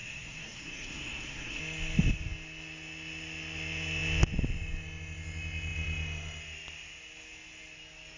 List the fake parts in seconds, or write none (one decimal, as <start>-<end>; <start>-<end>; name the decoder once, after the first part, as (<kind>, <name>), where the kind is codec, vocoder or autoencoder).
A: 0.0-1.6 (codec, SNAC)